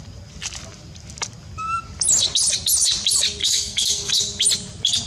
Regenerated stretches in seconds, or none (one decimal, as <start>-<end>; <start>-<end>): 3.4-4.1